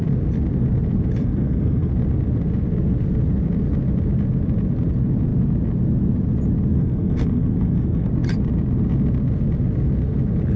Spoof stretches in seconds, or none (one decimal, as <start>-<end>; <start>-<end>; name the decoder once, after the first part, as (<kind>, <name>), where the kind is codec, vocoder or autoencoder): 1.2-1.9 (codec, SNAC); 6.7-8.1

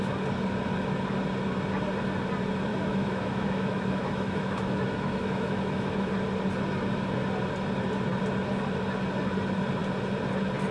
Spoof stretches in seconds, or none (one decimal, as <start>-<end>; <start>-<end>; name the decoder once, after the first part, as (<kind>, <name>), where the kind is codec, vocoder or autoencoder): 2.7-6.1 (autoencoder, DAC-VAE)

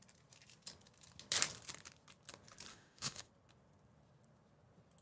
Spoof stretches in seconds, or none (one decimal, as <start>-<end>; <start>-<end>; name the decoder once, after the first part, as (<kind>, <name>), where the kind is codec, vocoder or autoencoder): 2.7-3.3 (autoencoder, DAC-VAE)

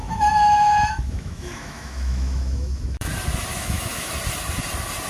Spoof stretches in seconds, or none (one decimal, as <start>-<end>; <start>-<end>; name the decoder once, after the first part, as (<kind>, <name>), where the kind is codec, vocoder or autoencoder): 0.0-3.1 (autoencoder, DAC-VAE); 3.5-4.1

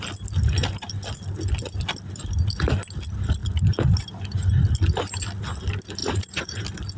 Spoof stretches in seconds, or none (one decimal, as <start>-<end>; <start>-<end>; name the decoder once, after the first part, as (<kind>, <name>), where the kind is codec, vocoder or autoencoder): 6.0-6.6 (vocoder, Vocos)

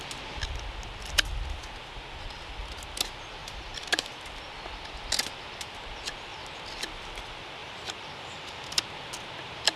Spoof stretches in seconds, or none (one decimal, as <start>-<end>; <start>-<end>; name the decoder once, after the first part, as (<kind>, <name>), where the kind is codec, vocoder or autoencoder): 3.4-4.1 (vocoder, BigVGAN v2); 7.6-8.8

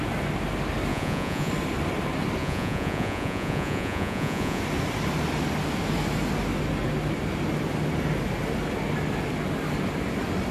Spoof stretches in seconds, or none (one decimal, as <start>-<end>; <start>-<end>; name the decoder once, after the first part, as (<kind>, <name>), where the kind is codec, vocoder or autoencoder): 0.9-1.5 (vocoder, Vocos); 2.4-4.6

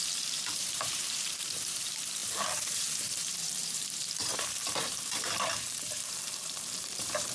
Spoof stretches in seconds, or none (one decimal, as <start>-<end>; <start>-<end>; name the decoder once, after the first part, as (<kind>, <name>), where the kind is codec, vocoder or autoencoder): 0.0-7.3 (vocoder, BigVGAN v2)